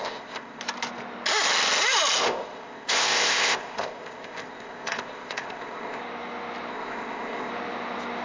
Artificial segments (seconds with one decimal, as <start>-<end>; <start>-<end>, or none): 0.0-0.6; 2.2-6.0; 6.7-7.5